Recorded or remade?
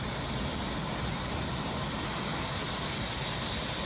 recorded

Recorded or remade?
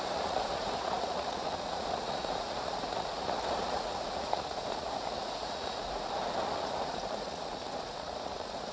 remade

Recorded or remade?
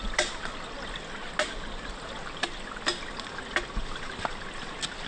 recorded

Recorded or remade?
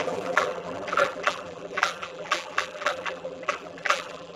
remade